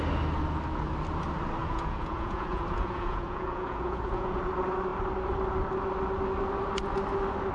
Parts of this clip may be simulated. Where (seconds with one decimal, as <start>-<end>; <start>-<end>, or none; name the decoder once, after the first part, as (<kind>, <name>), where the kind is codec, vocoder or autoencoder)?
1.6-4.4 (vocoder, Vocos)